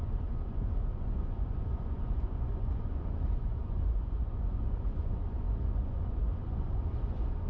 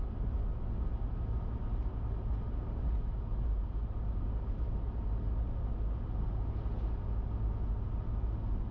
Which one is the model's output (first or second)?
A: first